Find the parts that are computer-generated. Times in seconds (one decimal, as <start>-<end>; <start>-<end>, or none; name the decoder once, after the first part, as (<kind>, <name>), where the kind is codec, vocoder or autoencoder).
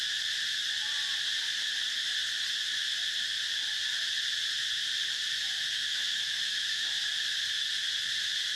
5.8-6.9 (autoencoder, DAC-VAE)